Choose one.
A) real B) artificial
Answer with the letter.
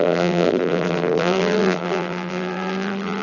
B